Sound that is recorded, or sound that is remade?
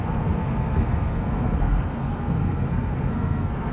remade